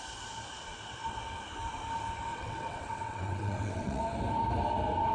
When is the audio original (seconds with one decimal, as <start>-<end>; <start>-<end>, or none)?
0.0-2.3; 4.0-5.1

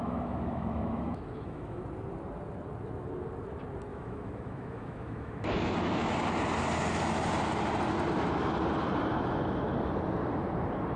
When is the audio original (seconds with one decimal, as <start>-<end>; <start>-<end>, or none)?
1.8-3.9; 6.1-11.0